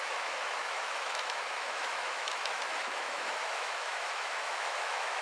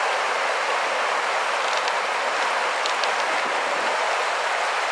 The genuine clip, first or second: second